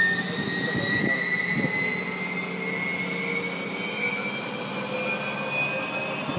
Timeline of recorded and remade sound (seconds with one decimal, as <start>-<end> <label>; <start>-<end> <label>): 0.0-6.4 recorded